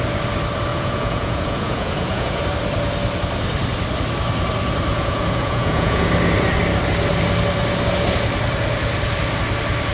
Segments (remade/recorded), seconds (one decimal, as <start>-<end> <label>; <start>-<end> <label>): 0.0-0.7 recorded; 0.7-2.4 remade; 2.4-4.9 recorded; 4.9-6.1 remade; 6.1-9.9 recorded